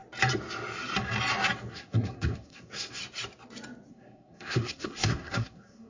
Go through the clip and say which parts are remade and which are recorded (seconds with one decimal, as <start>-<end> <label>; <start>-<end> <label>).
0.0-1.7 recorded; 1.7-3.0 remade; 3.0-3.9 recorded; 3.9-5.9 remade

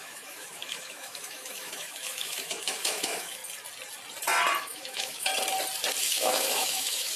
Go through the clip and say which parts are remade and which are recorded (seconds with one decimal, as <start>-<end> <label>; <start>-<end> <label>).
0.0-3.4 remade; 3.4-4.6 recorded; 4.6-5.3 remade; 5.3-6.0 recorded; 6.0-7.2 remade

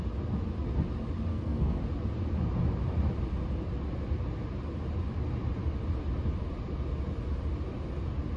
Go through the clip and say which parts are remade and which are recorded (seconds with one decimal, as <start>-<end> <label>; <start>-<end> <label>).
0.0-1.3 recorded; 1.3-1.8 remade; 1.8-8.4 recorded